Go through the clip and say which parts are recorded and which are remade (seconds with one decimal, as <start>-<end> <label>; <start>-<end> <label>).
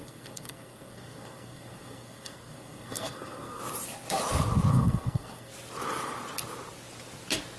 0.0-3.6 remade; 3.6-4.7 recorded; 4.7-5.5 remade; 5.5-7.6 recorded